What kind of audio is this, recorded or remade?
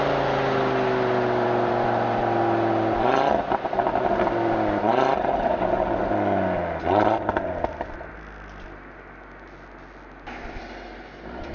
remade